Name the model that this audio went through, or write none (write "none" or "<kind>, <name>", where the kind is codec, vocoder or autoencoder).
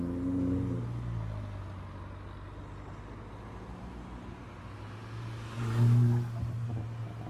none